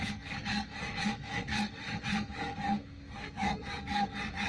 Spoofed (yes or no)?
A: yes